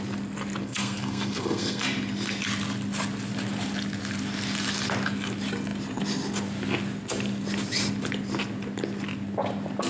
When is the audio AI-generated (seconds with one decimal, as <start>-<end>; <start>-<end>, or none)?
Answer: 0.6-1.8